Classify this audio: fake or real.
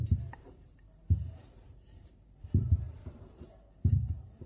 fake